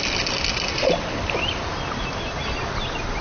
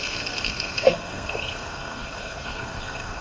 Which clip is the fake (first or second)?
second